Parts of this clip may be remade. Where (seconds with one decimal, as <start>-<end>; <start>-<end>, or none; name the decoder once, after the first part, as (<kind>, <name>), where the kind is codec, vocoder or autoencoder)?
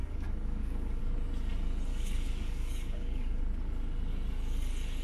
0.0-1.0 (codec, DAC); 1.9-3.4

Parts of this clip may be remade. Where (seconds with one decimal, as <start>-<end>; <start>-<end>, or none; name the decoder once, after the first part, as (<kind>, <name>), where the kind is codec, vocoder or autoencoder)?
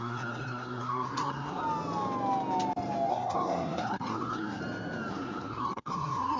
0.0-1.6 (codec, SNAC); 3.1-4.6; 5.1-6.4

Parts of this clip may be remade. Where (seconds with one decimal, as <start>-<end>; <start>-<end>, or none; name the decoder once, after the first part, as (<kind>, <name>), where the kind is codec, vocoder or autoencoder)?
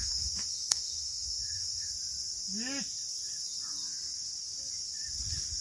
0.0-1.9 (autoencoder, DAC-VAE)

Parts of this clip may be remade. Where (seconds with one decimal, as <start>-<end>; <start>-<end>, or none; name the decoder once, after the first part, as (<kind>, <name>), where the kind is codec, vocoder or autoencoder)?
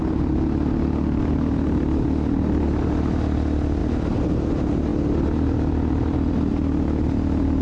none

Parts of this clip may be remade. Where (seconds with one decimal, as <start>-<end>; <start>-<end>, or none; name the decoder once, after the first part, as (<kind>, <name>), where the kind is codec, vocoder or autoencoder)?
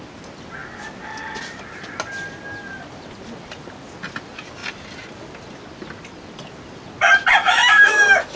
7.4-8.4 (autoencoder, DAC-VAE)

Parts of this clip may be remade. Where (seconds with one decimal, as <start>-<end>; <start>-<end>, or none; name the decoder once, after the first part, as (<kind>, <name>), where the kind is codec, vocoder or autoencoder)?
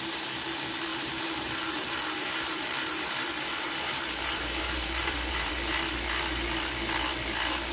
0.9-5.5 (vocoder, BigVGAN v2)